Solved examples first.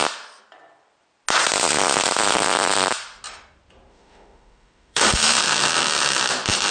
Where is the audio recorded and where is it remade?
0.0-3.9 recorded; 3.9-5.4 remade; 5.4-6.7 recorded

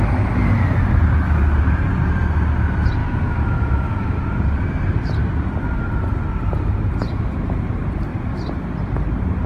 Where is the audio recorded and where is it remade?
0.0-3.0 recorded; 3.0-4.2 remade; 4.2-9.5 recorded

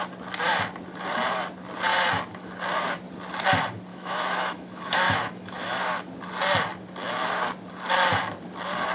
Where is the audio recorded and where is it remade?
0.0-3.9 recorded; 3.9-5.8 remade; 5.8-8.9 recorded

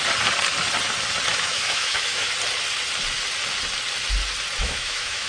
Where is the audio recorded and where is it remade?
0.0-1.3 recorded; 1.3-2.3 remade; 2.3-4.6 recorded; 4.6-5.3 remade

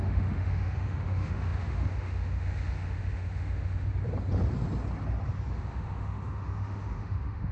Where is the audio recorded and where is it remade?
0.0-3.9 remade; 3.9-5.5 recorded; 5.5-7.5 remade